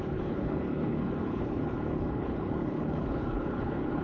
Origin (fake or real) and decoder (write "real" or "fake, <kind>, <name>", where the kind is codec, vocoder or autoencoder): fake, codec, HILCodec